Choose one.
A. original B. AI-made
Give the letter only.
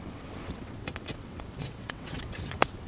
B